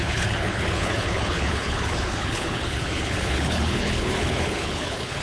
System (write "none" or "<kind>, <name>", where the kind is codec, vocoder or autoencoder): codec, HILCodec